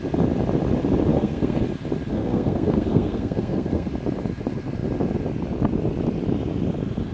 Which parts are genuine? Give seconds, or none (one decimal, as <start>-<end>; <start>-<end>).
0.0-1.1; 1.6-2.1; 3.9-7.1